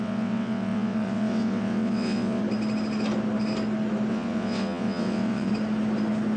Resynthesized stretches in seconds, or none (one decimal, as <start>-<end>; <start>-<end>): 0.0-2.4; 4.1-5.5